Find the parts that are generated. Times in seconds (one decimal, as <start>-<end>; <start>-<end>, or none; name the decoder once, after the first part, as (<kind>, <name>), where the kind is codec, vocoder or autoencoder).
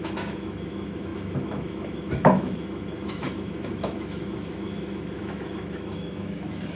0.0-6.8 (autoencoder, DAC-VAE)